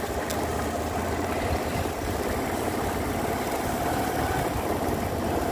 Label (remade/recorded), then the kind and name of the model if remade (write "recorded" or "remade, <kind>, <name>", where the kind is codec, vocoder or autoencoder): remade, vocoder, BigVGAN v2